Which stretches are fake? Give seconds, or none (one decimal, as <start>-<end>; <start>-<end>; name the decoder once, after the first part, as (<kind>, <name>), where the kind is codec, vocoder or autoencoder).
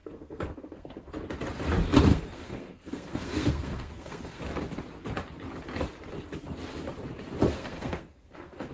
0.0-1.1 (codec, SNAC); 2.1-4.4; 7.5-8.7